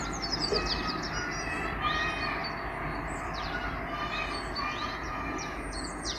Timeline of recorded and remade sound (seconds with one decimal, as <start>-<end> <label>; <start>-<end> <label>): 0.0-4.8 recorded; 4.8-6.2 remade